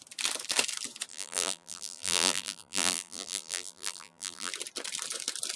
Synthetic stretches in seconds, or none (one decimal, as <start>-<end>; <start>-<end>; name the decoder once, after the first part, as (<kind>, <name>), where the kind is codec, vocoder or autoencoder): 1.1-4.5 (vocoder, BigVGAN v2)